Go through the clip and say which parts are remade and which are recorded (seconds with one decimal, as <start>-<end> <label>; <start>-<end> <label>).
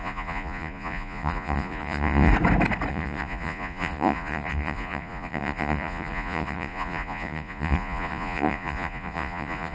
0.0-2.3 remade; 2.3-2.9 recorded; 2.9-9.7 remade